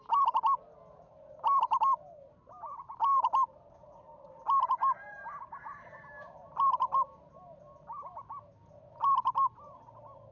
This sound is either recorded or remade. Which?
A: recorded